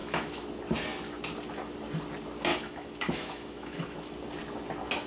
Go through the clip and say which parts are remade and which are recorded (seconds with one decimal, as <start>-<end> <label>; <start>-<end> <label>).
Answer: 0.0-0.5 remade; 0.5-2.5 recorded; 2.5-4.1 remade; 4.1-5.1 recorded

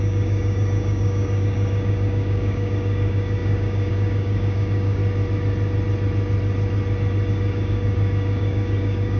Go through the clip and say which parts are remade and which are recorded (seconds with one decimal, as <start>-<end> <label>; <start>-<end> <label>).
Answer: 0.0-5.0 remade; 5.0-7.3 recorded; 7.3-9.2 remade

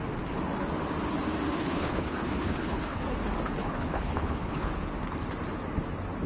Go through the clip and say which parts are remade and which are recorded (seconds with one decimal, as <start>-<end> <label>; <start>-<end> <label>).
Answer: 0.0-1.6 recorded; 1.6-3.0 remade; 3.0-3.6 recorded; 3.6-4.7 remade; 4.7-6.3 recorded

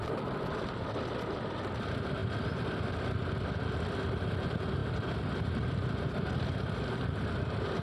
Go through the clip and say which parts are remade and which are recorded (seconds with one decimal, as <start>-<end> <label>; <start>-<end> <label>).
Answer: 0.0-7.8 recorded

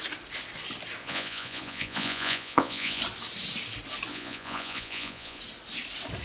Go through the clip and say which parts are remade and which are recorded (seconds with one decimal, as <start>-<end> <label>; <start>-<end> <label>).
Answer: 0.0-1.0 recorded; 1.0-3.0 remade; 3.0-4.1 recorded; 4.1-5.4 remade; 5.4-6.2 recorded

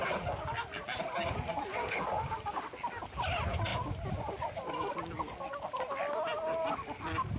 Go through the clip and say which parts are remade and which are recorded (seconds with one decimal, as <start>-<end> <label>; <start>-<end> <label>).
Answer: 0.0-1.8 recorded; 1.8-2.6 remade; 2.6-7.4 recorded

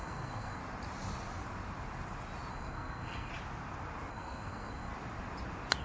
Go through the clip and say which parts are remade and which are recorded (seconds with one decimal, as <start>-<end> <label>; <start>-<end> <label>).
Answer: 0.0-0.6 remade; 0.6-2.5 recorded; 2.5-3.3 remade; 3.3-4.1 recorded; 4.1-4.9 remade; 4.9-5.8 recorded